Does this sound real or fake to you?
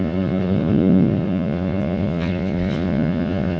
fake